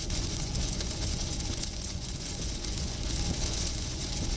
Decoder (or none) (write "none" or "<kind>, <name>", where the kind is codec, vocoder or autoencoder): vocoder, Vocos